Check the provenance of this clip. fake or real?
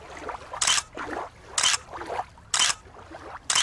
real